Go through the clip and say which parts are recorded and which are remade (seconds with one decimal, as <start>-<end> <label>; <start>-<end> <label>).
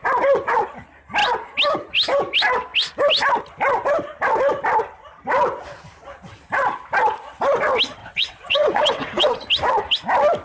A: 0.0-8.0 recorded; 8.0-9.4 remade; 9.4-10.4 recorded